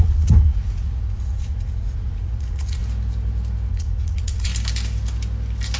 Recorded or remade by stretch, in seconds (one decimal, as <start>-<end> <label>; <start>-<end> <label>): 0.0-2.8 remade; 2.8-3.7 recorded; 3.7-4.5 remade; 4.5-5.8 recorded